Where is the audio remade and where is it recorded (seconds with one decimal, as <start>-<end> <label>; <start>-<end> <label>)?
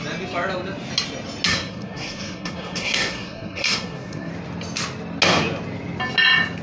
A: 0.0-1.5 recorded; 1.5-4.3 remade; 4.3-6.6 recorded